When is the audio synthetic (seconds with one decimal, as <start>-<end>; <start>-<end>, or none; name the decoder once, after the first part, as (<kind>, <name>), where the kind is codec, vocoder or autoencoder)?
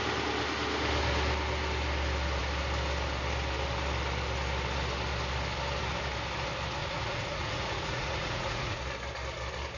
6.8-8.8 (vocoder, Vocos)